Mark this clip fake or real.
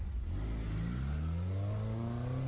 real